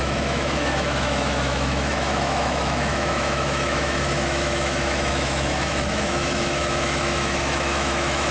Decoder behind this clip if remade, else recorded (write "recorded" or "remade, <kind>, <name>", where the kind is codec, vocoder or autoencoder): remade, autoencoder, DAC-VAE